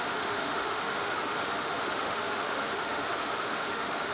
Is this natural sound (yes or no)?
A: no